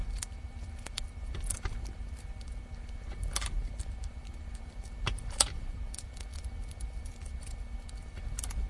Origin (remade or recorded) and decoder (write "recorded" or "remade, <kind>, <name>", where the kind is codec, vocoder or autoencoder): remade, vocoder, BigVGAN v2